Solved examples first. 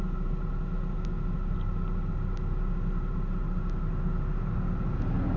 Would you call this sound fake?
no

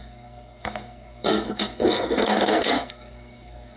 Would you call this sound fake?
yes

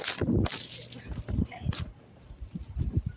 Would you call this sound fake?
yes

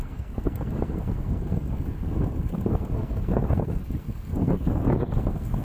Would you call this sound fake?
yes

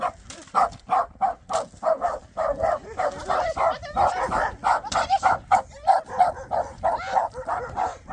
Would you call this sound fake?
no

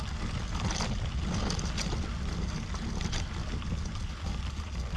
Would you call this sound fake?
no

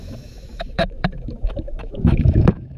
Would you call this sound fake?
yes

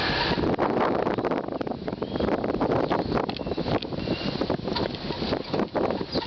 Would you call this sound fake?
no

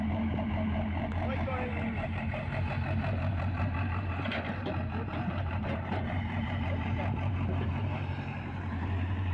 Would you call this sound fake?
yes